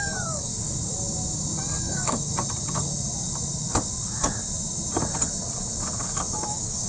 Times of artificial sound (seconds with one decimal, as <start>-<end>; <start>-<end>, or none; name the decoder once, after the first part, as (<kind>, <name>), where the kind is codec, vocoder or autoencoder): 0.0-0.5 (codec, DAC); 1.8-2.3; 6.4-6.9